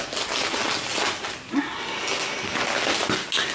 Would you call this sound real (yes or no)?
yes